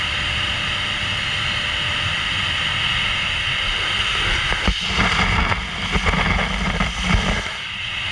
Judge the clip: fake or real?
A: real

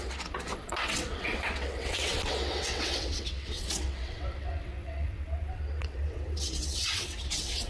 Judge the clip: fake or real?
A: fake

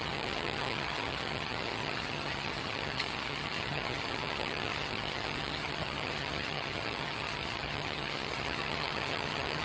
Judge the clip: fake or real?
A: fake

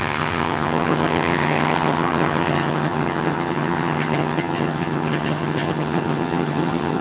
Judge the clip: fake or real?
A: fake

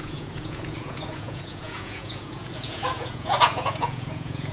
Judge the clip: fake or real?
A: fake